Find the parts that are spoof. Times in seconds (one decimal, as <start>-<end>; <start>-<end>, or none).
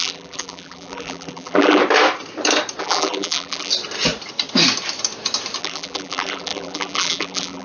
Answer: 0.0-1.8; 2.8-3.7; 5.6-7.6